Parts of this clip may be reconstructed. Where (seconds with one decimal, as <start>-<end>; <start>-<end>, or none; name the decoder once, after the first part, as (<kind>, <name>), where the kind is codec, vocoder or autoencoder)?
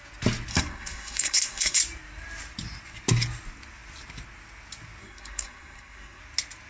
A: 0.5-1.8 (codec, SNAC); 5.0-6.2